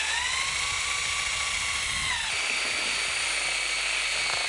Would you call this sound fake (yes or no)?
no